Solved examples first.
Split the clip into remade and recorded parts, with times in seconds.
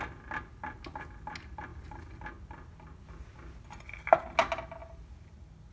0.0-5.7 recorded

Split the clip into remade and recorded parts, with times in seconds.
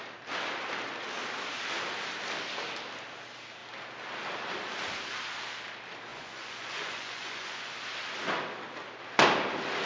0.0-6.1 recorded; 6.1-7.7 remade; 7.7-9.8 recorded